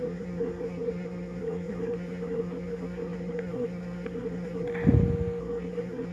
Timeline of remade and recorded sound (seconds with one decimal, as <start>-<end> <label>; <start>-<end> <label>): 0.0-4.7 remade; 4.7-5.4 recorded; 5.4-6.1 remade